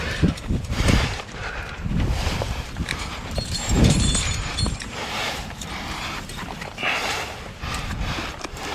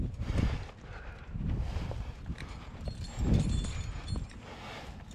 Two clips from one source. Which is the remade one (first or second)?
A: first